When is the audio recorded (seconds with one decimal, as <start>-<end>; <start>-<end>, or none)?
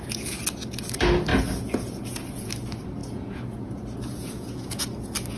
0.0-1.3; 2.5-3.0; 4.8-5.4